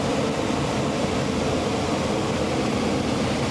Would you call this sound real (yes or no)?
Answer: yes